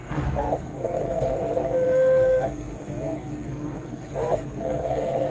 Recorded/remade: remade